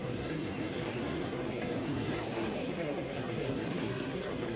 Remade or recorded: remade